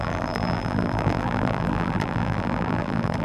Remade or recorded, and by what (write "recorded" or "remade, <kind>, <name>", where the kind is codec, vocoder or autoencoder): remade, vocoder, BigVGAN v2